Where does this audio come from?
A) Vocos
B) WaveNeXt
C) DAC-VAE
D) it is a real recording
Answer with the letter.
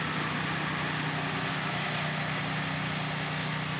D